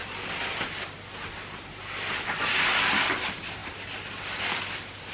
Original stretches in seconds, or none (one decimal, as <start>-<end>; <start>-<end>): none